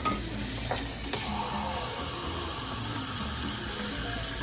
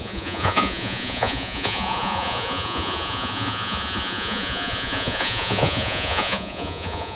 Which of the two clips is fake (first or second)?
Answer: second